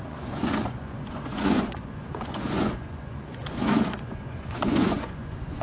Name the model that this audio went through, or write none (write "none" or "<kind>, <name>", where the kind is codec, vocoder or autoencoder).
vocoder, Vocos